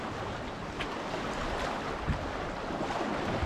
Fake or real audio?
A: real